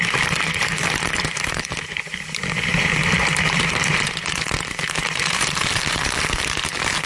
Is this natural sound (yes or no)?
no